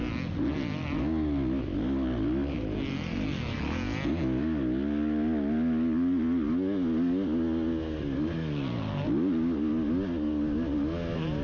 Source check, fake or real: real